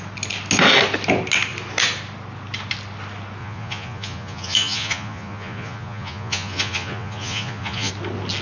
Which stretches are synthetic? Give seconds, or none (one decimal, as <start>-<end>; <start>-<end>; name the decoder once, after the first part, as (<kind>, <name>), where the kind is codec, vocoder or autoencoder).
3.4-7.9 (vocoder, Vocos)